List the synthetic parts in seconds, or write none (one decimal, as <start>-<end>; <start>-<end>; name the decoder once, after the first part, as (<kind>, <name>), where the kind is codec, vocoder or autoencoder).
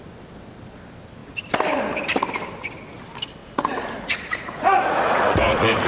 3.4-5.9 (vocoder, Vocos)